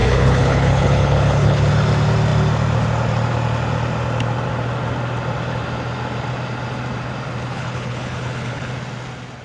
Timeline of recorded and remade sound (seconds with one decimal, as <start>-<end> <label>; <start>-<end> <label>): 0.0-1.7 remade; 1.7-7.5 recorded; 7.5-8.7 remade; 8.7-9.4 recorded